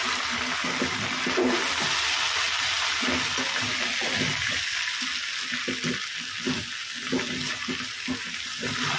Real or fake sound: real